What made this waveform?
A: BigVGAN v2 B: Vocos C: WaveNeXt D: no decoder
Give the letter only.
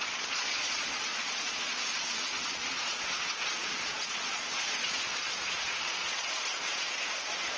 B